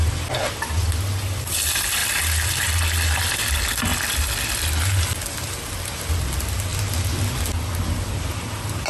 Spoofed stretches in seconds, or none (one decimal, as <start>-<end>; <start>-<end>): none